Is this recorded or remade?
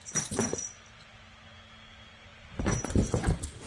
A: recorded